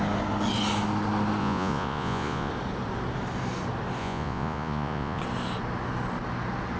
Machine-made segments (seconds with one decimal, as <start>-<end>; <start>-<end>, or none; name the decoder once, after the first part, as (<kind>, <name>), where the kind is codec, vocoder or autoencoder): 1.4-2.5 (vocoder, Vocos); 4.0-5.2